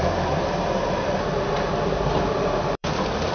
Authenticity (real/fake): fake